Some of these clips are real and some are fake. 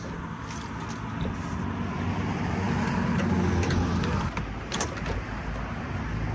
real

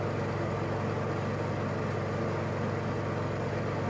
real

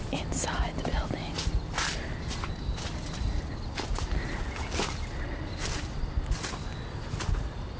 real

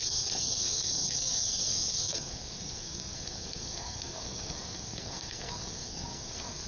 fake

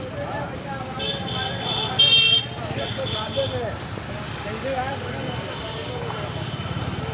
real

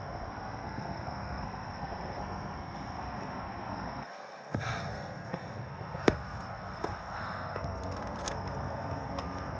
fake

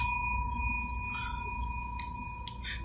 real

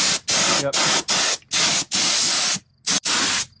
real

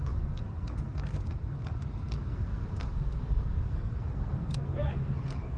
fake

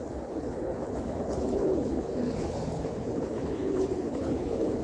fake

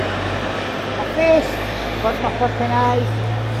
real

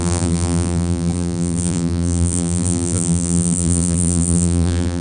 fake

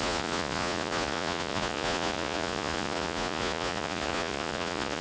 fake